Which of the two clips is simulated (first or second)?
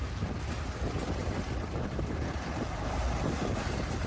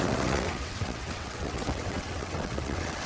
second